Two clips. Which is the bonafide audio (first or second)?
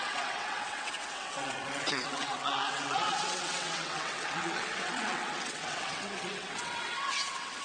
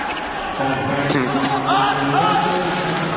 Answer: second